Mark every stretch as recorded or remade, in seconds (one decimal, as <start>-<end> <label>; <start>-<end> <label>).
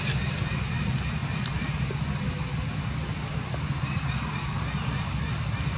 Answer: 0.0-5.8 recorded